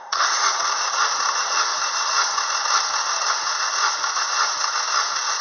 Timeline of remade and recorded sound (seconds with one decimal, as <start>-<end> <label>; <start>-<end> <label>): 0.0-1.7 remade; 1.7-3.3 recorded; 3.3-4.5 remade; 4.5-5.0 recorded; 5.0-5.4 remade